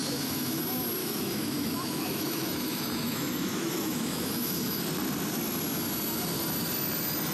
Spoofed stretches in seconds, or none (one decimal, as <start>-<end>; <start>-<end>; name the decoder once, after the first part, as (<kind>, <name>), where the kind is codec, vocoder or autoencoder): 0.0-0.6 (autoencoder, DAC-VAE); 1.0-4.8

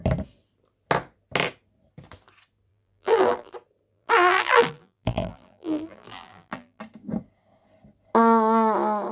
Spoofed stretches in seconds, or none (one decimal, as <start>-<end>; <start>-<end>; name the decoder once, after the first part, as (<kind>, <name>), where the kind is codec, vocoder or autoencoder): 2.7-3.5 (vocoder, BigVGAN v2); 3.9-6.8